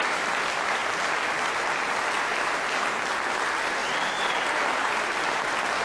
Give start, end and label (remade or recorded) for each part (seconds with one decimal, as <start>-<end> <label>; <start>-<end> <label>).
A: 0.0-3.8 recorded; 3.8-4.9 remade; 4.9-5.8 recorded